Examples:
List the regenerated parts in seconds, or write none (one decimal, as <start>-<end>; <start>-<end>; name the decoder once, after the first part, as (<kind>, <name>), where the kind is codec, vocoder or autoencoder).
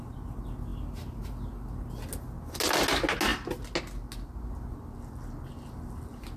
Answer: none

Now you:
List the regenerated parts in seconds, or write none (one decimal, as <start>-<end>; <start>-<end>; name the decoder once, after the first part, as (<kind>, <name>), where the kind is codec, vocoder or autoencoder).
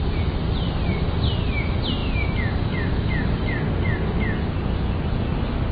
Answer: none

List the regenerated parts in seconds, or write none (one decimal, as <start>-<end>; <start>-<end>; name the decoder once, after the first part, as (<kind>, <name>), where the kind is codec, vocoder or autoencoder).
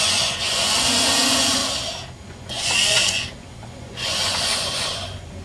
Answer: 0.0-1.6 (vocoder, Vocos); 2.3-5.4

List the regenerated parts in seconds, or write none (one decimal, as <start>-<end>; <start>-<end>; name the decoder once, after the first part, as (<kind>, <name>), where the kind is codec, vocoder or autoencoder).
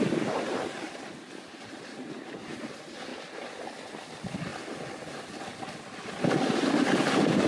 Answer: none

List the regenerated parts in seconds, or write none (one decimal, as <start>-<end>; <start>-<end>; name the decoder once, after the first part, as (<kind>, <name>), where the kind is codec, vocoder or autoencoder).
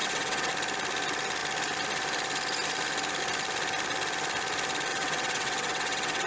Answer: 0.0-0.5 (vocoder, WaveNeXt); 4.9-6.3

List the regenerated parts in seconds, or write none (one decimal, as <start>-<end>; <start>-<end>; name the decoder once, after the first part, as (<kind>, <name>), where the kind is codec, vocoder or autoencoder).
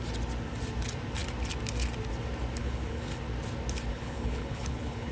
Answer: 2.6-3.2 (codec, HILCodec); 3.9-5.1